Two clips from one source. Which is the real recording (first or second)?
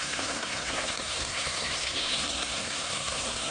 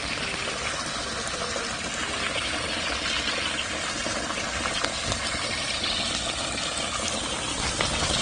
second